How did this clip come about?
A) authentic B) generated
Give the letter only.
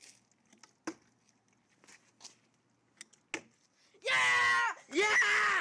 A